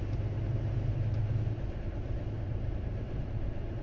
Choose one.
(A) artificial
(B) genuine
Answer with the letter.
B